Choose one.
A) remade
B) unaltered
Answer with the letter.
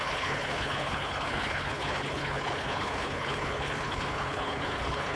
A